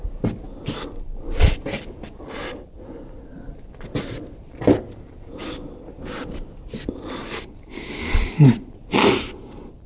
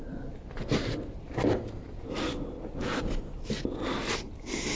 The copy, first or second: first